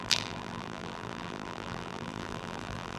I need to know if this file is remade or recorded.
remade